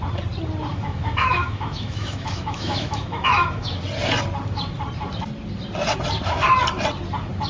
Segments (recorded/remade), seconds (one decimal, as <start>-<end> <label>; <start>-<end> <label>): 0.0-0.7 recorded; 0.7-3.8 remade; 3.8-7.5 recorded